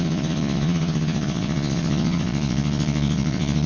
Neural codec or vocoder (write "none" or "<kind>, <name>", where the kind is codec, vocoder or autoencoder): vocoder, Vocos